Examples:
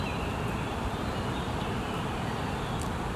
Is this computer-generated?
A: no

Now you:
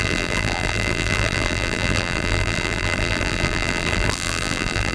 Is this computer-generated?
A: yes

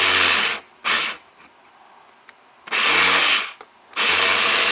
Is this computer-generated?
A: no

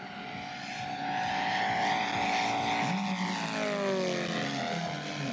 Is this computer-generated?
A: no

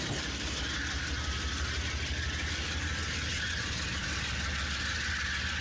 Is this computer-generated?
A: no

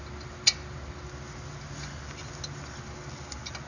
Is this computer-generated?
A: no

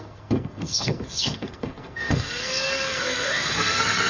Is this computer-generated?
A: yes